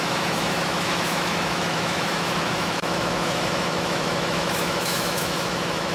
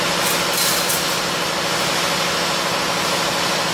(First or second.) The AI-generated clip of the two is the first